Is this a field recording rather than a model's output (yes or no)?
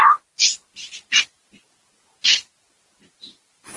yes